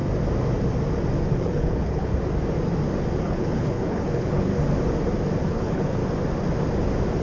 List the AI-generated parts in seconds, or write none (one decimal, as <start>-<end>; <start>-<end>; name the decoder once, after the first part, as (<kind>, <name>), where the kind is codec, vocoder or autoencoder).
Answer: 1.4-2.1 (codec, HILCodec); 3.2-4.5; 5.5-6.0